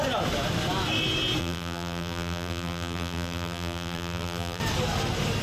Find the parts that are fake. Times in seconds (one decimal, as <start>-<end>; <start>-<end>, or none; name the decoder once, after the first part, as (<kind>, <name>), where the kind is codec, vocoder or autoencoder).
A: 1.4-4.6 (vocoder, BigVGAN v2)